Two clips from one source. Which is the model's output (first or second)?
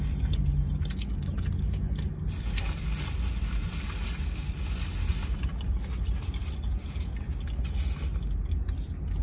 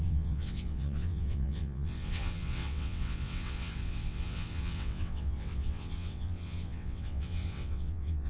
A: second